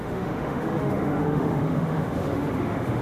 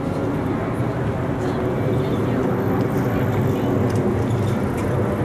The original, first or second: second